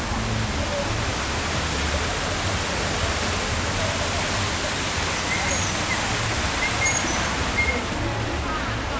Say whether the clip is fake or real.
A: real